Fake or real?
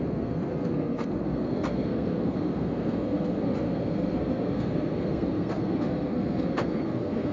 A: fake